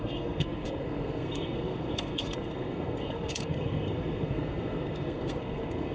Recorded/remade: remade